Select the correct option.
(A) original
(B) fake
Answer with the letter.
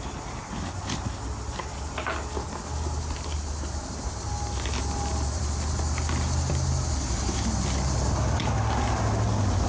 A